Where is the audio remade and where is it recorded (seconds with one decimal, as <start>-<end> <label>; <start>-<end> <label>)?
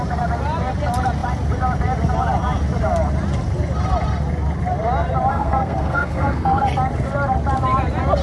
0.0-5.3 recorded; 5.3-6.6 remade; 6.6-8.2 recorded